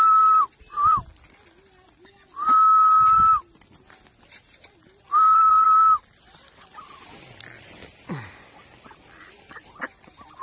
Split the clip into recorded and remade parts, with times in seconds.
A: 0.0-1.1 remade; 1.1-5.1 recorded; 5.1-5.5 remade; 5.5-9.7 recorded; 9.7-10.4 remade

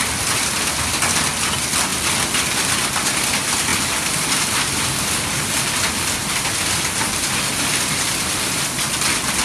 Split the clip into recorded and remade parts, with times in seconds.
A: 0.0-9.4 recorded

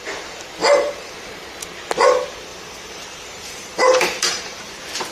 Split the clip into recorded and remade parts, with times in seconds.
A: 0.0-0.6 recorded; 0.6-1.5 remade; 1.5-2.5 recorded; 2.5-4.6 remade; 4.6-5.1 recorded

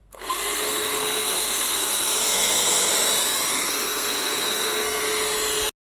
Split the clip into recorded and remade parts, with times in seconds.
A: 0.0-2.9 remade; 2.9-3.5 recorded; 3.5-5.0 remade; 5.0-6.0 recorded

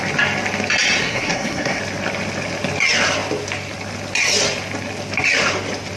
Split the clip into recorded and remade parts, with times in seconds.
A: 0.0-1.0 recorded; 1.0-1.8 remade; 1.8-6.0 recorded

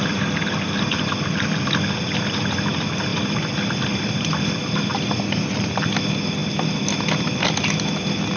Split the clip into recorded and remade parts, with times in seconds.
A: 0.0-8.4 recorded

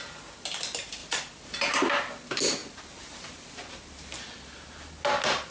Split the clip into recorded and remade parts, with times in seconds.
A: 0.0-1.0 recorded; 1.0-1.8 remade; 1.8-5.5 recorded